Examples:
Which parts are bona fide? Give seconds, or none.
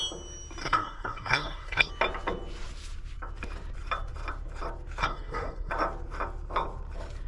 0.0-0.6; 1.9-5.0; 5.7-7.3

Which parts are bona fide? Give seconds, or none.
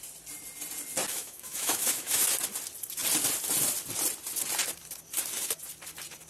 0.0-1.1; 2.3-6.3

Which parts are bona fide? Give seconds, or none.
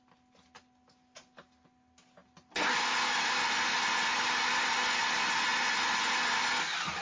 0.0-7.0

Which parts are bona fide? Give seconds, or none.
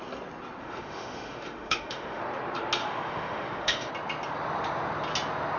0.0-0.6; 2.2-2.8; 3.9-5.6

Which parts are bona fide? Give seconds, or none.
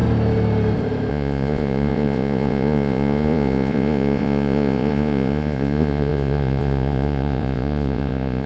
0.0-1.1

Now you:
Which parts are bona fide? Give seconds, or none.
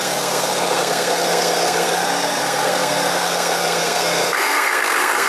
none